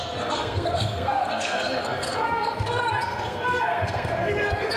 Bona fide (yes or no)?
no